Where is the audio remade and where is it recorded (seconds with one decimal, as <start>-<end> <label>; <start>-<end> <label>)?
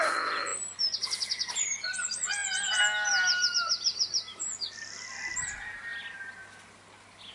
0.0-7.3 recorded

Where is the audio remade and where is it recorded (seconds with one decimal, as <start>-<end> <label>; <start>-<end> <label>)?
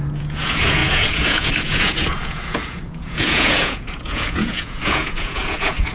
0.0-5.9 remade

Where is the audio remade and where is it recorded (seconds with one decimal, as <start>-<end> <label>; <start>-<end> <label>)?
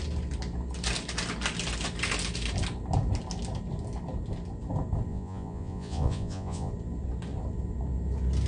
0.0-5.1 recorded; 5.1-6.7 remade; 6.7-8.5 recorded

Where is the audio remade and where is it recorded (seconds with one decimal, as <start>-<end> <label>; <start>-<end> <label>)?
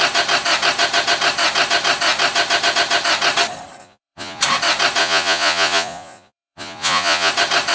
0.0-3.8 recorded; 3.8-4.4 remade; 4.4-5.0 recorded; 5.0-7.3 remade; 7.3-7.7 recorded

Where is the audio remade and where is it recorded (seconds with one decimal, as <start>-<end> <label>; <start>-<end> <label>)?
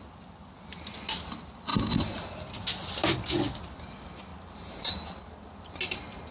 0.0-1.7 recorded; 1.7-2.3 remade; 2.3-4.3 recorded; 4.3-4.9 remade; 4.9-6.3 recorded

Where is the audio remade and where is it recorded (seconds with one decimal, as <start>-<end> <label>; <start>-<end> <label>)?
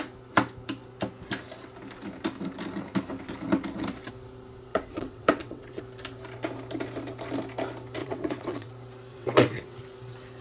0.0-4.7 recorded; 4.7-5.8 remade; 5.8-8.0 recorded; 8.0-8.7 remade; 8.7-9.1 recorded; 9.1-9.8 remade; 9.8-10.4 recorded